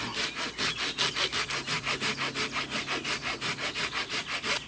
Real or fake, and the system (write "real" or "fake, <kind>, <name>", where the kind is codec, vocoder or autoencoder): real